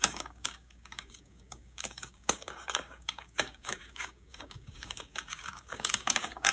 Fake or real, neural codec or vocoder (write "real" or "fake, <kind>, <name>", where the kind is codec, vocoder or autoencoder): fake, codec, DAC